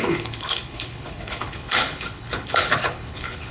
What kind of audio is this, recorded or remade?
remade